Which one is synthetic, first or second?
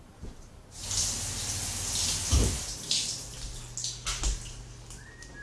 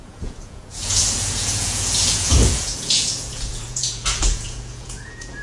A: second